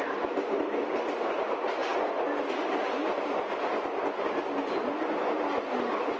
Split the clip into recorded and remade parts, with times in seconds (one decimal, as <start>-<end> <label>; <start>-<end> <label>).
0.0-6.2 recorded